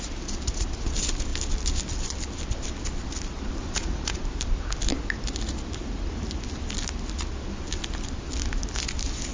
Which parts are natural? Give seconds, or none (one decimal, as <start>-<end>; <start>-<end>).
0.0-3.6; 4.2-9.3